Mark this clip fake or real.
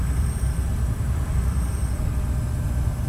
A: real